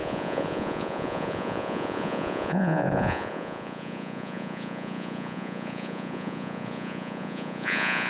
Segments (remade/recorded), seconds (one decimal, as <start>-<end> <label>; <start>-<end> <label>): 0.0-8.1 remade